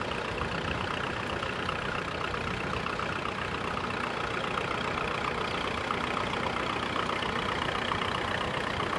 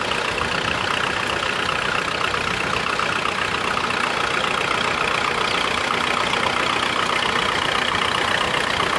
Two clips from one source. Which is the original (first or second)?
second